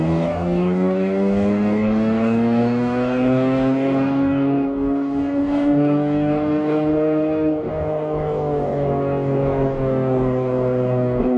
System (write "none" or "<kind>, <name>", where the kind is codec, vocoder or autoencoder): codec, DAC